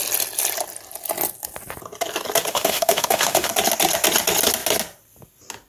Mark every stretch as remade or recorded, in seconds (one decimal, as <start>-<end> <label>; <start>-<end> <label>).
0.0-2.5 recorded; 2.5-3.5 remade; 3.5-5.7 recorded